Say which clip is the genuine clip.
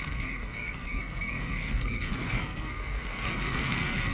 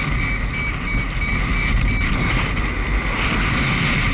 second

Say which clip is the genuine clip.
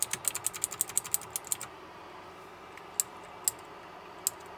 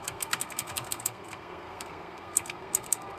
first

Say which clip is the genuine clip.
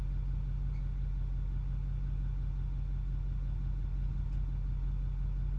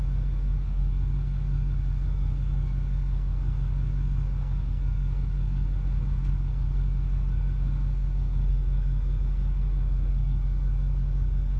first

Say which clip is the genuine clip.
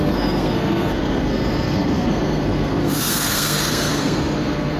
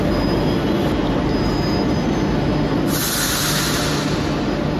second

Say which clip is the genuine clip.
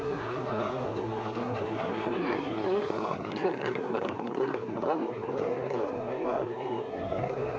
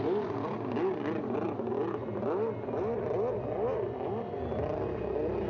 second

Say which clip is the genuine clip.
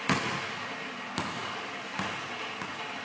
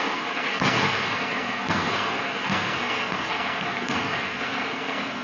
first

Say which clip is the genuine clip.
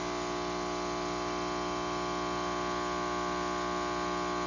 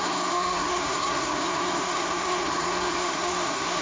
first